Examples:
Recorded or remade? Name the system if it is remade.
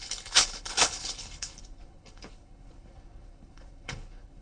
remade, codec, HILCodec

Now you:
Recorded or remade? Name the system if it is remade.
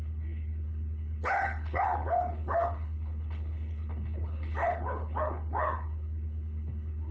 remade, codec, HILCodec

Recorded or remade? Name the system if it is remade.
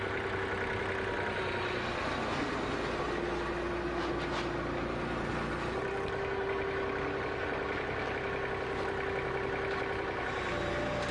recorded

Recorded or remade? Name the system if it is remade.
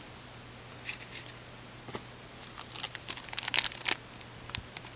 recorded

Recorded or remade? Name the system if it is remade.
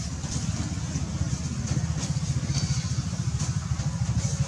recorded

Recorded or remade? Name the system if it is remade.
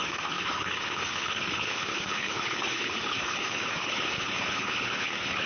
remade, codec, HILCodec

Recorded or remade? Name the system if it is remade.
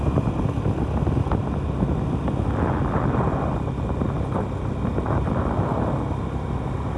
recorded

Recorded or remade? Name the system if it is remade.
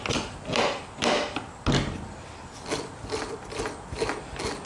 recorded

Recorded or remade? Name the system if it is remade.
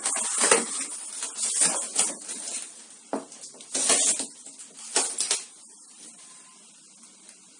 recorded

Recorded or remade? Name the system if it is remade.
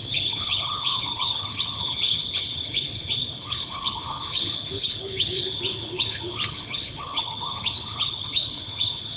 remade, codec, HILCodec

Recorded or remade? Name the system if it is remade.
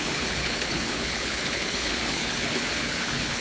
remade, codec, HILCodec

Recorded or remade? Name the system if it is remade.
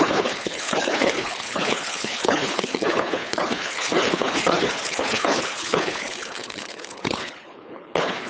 remade, codec, HILCodec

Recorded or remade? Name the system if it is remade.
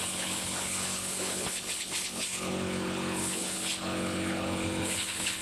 remade, codec, HILCodec